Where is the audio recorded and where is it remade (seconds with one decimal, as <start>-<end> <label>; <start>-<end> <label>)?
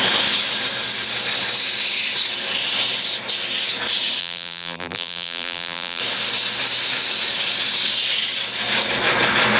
0.0-4.2 recorded; 4.2-6.0 remade; 6.0-9.6 recorded